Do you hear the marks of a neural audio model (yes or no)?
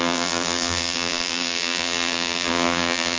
yes